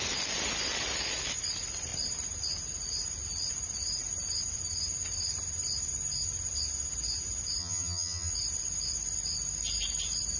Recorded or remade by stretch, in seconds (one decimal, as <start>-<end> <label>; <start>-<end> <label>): 0.0-7.6 recorded; 7.6-8.3 remade; 8.3-10.4 recorded